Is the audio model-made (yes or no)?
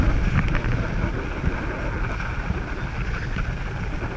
no